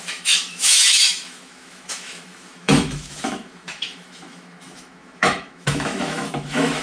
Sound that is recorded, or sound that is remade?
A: remade